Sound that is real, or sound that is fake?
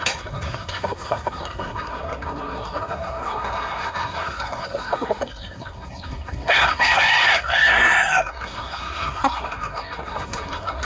fake